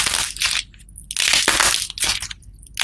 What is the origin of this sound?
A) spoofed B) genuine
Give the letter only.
B